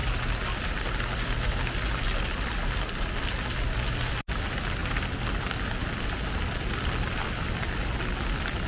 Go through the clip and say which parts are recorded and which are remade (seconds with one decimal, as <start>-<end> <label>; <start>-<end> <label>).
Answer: 0.0-8.7 recorded